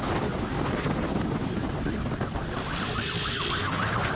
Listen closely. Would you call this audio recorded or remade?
recorded